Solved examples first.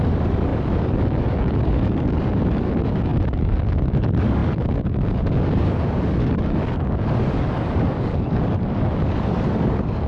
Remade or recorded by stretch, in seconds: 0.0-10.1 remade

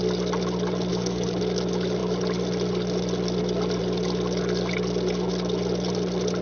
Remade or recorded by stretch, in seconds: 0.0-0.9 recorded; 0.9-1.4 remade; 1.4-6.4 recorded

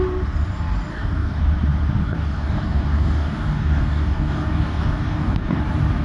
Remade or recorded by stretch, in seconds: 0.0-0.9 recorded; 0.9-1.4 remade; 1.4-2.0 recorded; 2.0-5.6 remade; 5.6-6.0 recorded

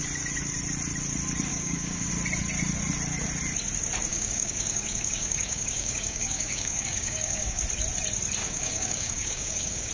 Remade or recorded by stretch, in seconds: 0.0-1.5 recorded; 1.5-2.1 remade; 2.1-4.1 recorded; 4.1-7.6 remade; 7.6-8.4 recorded; 8.4-9.9 remade

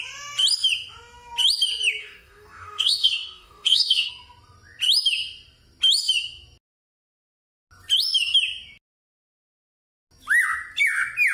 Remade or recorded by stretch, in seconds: 0.0-2.0 recorded; 2.0-4.1 remade; 4.1-11.3 recorded

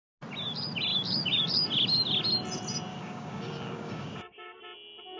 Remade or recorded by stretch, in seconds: 0.0-2.9 recorded; 2.9-4.6 remade; 4.6-5.2 recorded

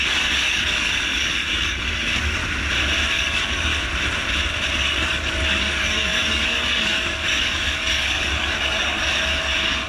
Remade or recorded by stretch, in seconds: 0.0-2.4 remade; 2.4-3.1 recorded; 3.1-3.7 remade; 3.7-4.7 recorded; 4.7-9.9 remade

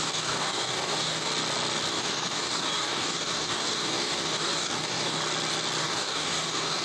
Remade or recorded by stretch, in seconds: 0.0-1.3 remade; 1.3-1.9 recorded; 1.9-5.2 remade; 5.2-5.8 recorded; 5.8-6.8 remade